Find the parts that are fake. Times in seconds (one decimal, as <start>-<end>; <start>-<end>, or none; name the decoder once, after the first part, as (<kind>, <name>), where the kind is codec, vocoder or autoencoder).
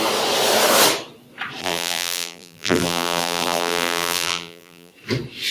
1.6-4.9 (vocoder, BigVGAN v2)